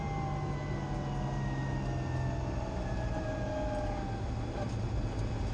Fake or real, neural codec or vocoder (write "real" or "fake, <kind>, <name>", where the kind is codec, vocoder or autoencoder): real